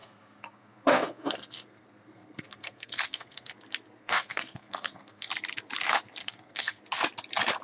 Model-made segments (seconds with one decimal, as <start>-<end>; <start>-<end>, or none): 0.0-3.5; 4.0-5.3; 6.2-6.8